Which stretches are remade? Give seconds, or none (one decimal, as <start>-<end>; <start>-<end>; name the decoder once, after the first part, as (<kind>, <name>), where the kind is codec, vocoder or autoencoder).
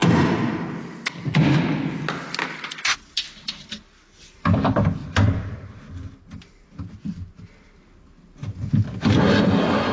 none